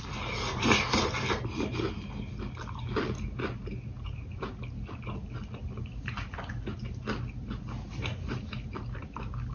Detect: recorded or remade recorded